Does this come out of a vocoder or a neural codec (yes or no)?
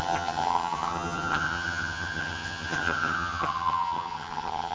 yes